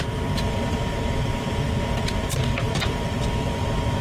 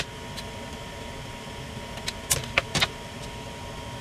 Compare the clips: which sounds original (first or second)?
second